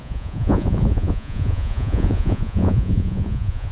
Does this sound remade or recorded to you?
remade